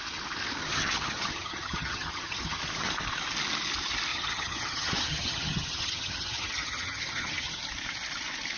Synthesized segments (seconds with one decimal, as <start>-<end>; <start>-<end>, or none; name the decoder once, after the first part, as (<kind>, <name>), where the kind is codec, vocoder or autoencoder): 0.6-2.6 (vocoder, HiFi-GAN); 4.1-7.6